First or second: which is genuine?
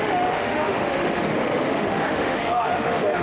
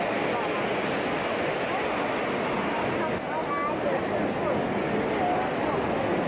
second